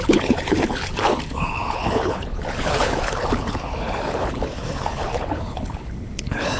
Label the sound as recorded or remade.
remade